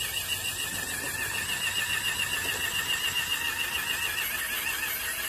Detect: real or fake real